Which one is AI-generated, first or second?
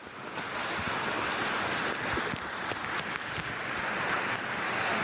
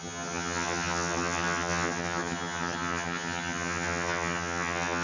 second